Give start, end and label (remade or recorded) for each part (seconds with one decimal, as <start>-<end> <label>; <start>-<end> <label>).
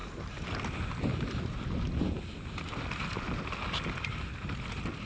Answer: 0.0-5.1 recorded